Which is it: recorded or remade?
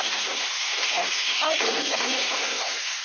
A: remade